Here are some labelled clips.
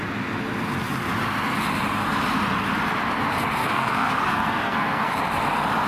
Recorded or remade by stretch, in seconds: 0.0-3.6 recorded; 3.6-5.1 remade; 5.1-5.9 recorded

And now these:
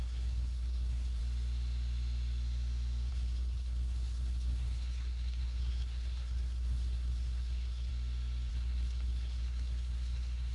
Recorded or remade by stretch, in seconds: 0.0-1.2 remade; 1.2-3.1 recorded; 3.1-7.9 remade; 7.9-8.5 recorded; 8.5-10.5 remade

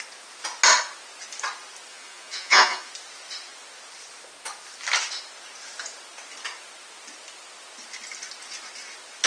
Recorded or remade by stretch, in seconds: 0.0-1.9 recorded; 1.9-2.9 remade; 2.9-9.3 recorded

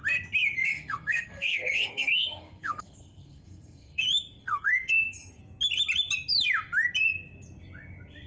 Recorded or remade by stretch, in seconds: 0.0-0.6 recorded; 0.6-4.0 remade; 4.0-4.4 recorded; 4.4-5.4 remade; 5.4-8.3 recorded

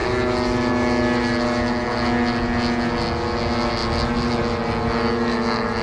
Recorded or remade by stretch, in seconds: 0.0-5.8 recorded

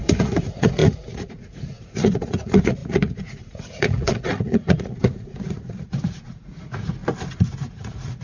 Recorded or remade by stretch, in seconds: 0.0-7.0 remade; 7.0-7.7 recorded; 7.7-8.2 remade